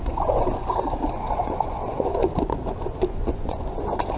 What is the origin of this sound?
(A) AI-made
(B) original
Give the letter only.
A